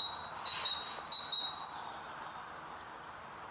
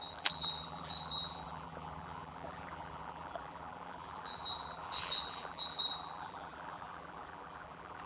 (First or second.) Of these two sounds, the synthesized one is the second